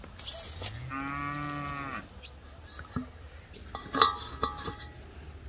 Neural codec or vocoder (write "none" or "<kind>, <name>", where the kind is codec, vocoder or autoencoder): none